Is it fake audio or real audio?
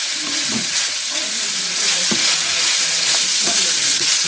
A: fake